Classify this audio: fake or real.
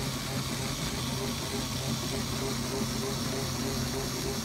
real